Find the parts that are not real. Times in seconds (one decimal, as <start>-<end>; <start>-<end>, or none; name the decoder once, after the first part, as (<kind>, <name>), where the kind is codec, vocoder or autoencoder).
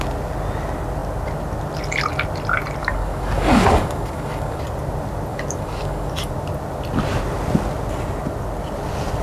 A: 2.8-4.6 (codec, DAC); 5.3-6.3